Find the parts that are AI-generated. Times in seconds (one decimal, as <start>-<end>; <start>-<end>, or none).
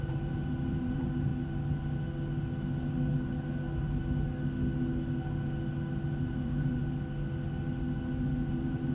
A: 0.0-1.3; 6.2-6.8; 8.5-8.9